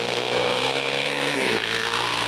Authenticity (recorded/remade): remade